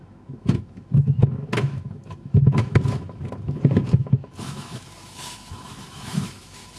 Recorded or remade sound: remade